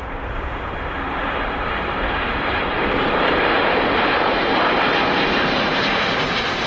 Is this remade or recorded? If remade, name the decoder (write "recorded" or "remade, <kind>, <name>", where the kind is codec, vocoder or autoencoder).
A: remade, vocoder, BigVGAN v2